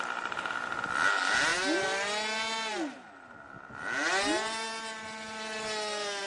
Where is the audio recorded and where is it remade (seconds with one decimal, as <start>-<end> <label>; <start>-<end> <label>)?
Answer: 0.0-6.3 recorded